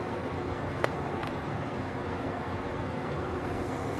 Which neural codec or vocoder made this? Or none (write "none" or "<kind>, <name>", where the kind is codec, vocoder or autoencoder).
codec, SNAC